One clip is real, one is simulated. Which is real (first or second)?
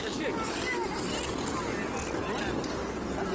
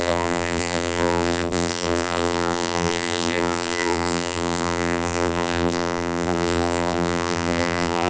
first